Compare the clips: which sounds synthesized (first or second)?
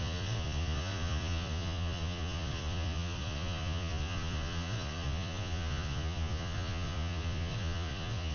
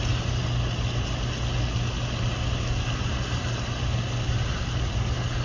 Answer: first